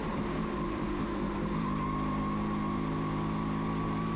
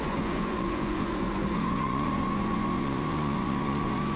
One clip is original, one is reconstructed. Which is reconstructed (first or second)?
second